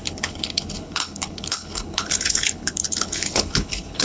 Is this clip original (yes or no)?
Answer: no